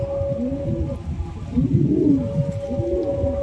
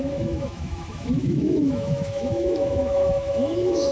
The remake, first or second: second